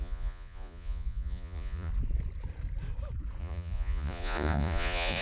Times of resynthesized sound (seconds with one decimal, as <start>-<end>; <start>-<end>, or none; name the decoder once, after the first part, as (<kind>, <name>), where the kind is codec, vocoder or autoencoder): 0.0-1.9 (vocoder, Vocos); 3.4-5.2